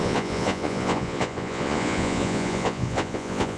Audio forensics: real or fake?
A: fake